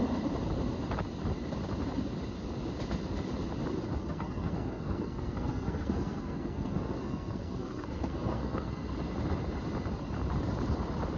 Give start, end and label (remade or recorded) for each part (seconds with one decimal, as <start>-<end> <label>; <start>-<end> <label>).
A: 0.0-4.0 recorded; 4.0-8.9 remade; 8.9-11.2 recorded